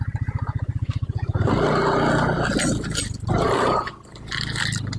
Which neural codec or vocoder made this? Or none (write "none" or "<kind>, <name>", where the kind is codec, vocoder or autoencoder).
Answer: none